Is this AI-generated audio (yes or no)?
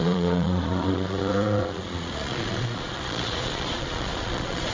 yes